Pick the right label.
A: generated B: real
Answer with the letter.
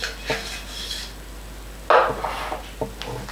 B